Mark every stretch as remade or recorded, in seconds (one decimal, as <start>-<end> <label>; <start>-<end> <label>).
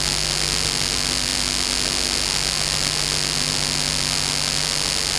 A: 0.0-5.2 recorded